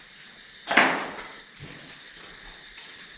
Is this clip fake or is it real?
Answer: real